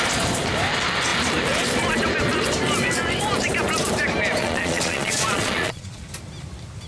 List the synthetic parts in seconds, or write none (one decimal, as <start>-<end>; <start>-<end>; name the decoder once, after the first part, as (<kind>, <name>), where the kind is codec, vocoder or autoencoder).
4.4-6.0 (vocoder, Vocos)